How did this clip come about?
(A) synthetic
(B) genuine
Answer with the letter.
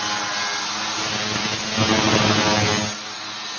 B